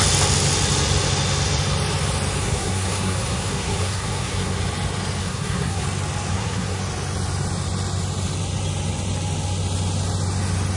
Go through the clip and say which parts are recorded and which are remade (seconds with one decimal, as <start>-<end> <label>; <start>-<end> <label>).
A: 0.0-2.4 recorded; 2.4-4.6 remade; 4.6-5.2 recorded; 5.2-5.8 remade; 5.8-6.3 recorded; 6.3-6.8 remade; 6.8-10.8 recorded